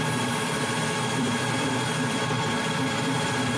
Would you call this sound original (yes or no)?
no